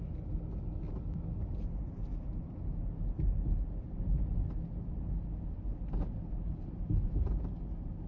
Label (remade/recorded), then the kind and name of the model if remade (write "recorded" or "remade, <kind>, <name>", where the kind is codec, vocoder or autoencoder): recorded